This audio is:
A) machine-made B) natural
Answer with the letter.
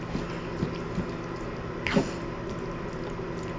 B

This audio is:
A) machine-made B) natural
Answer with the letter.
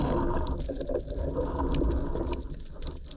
B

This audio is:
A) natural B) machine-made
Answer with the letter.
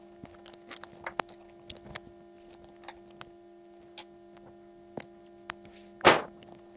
A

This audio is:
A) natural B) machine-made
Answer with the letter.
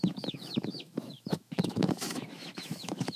B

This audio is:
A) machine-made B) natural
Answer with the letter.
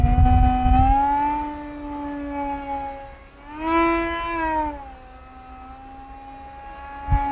B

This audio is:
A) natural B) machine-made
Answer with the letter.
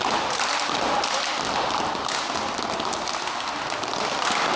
A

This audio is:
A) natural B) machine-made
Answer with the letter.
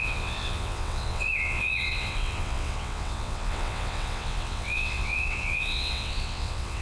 B